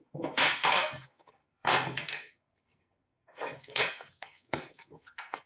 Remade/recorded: remade